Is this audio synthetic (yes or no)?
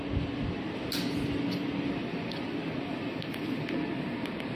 no